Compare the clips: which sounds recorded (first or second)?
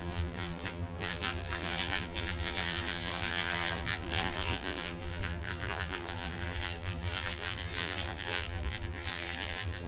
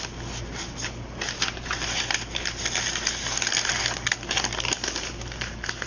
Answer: second